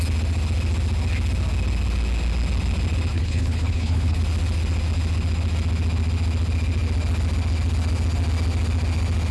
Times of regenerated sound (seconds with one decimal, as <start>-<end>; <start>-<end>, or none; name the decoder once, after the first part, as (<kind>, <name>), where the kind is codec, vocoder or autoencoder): 3.1-4.2 (codec, HILCodec)

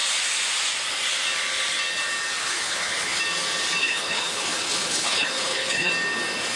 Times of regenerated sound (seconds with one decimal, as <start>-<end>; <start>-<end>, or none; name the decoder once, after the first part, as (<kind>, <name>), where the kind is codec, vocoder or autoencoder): 2.4-3.2 (codec, HILCodec); 3.8-5.9

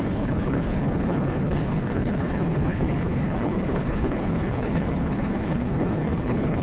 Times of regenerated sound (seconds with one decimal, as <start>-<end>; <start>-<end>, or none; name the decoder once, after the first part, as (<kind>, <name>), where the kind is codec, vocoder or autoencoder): 0.0-6.6 (codec, HILCodec)

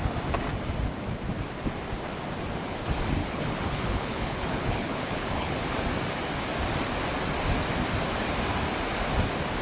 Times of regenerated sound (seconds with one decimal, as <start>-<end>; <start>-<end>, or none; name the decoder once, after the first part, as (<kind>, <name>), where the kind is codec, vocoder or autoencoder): 3.2-5.8 (codec, HILCodec)

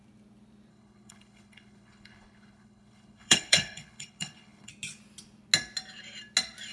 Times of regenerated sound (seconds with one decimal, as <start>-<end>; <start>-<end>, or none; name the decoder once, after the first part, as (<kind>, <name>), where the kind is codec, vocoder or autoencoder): 0.7-4.7 (codec, HILCodec)

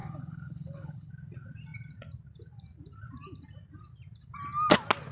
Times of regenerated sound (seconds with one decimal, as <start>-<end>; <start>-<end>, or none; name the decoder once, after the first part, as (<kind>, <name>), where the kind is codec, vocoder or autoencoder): 0.0-1.1 (codec, HILCodec)

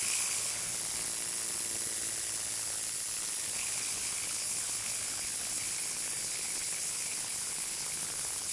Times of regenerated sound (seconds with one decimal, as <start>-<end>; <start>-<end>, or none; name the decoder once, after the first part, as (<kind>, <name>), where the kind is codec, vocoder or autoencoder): 0.0-0.7 (codec, HILCodec); 3.6-8.5